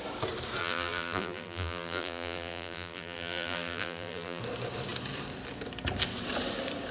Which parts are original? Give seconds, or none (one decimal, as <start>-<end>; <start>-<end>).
0.0-0.6; 4.4-6.9